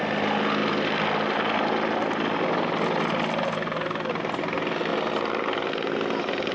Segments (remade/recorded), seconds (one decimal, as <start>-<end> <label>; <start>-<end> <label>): 0.0-6.5 recorded